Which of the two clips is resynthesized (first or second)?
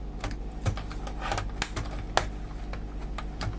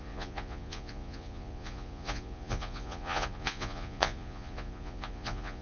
second